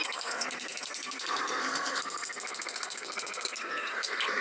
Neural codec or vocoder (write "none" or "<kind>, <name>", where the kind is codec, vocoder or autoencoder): codec, SNAC